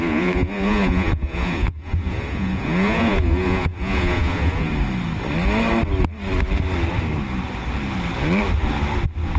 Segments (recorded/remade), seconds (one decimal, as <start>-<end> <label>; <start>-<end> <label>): 0.0-4.7 remade; 4.7-9.4 recorded